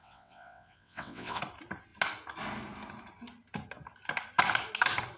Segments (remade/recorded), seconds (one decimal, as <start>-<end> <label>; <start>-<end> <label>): 0.0-1.4 remade; 1.4-5.2 recorded